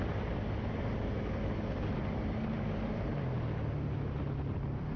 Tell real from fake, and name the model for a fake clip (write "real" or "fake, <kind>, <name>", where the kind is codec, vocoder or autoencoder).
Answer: real